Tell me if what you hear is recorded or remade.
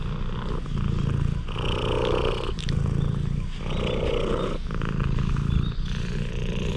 recorded